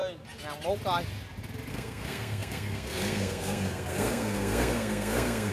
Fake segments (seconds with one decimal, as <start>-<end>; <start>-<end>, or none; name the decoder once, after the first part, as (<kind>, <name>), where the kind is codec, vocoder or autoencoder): 1.7-5.5 (codec, SNAC)

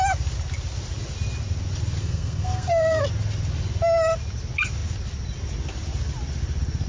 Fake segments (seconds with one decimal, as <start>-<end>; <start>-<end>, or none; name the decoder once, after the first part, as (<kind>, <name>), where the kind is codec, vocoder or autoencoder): 2.0-3.0 (codec, SNAC)

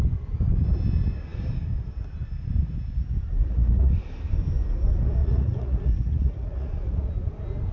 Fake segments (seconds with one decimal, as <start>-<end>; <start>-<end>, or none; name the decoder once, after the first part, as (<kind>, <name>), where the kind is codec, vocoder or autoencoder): 3.4-4.0 (vocoder, Vocos); 5.2-7.1

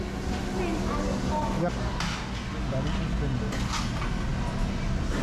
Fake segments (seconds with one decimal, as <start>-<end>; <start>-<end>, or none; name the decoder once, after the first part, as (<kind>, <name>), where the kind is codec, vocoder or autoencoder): none

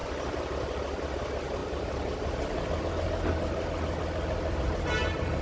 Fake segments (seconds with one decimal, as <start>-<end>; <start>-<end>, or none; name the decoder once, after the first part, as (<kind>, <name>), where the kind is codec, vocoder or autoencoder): none

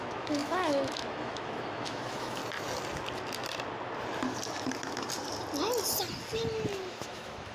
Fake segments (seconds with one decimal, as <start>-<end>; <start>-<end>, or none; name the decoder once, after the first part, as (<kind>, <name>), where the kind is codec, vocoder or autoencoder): 0.0-2.4 (autoencoder, DAC-VAE); 6.9-7.5

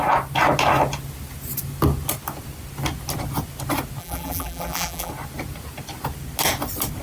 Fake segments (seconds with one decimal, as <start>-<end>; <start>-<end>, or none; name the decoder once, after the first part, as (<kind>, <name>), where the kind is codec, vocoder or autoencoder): 4.0-5.1 (vocoder, BigVGAN v2)